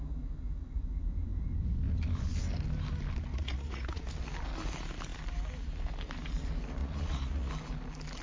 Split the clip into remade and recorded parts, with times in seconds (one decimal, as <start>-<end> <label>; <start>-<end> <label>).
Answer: 0.0-3.3 recorded; 3.3-4.1 remade; 4.1-6.8 recorded; 6.8-7.5 remade; 7.5-8.2 recorded